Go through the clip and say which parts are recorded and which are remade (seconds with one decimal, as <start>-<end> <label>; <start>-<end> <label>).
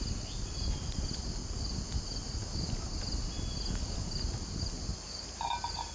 0.0-5.9 recorded